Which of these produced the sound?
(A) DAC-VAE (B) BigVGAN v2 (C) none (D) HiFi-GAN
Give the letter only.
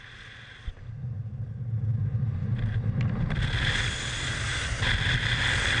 C